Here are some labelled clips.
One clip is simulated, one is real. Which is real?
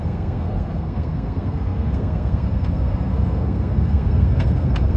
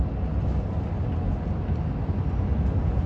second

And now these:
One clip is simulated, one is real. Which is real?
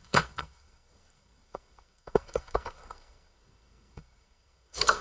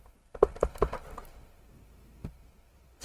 second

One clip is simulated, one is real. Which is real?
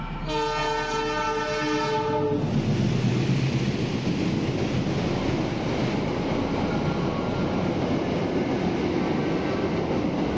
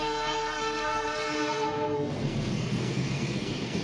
first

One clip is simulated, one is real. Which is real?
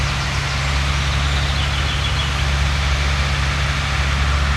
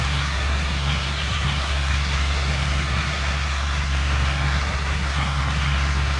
first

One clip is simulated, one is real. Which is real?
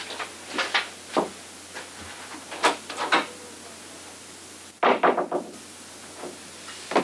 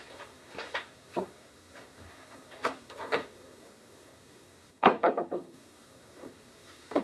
first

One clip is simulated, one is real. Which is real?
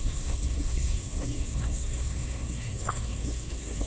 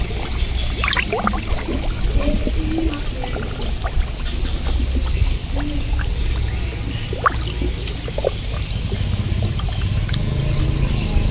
second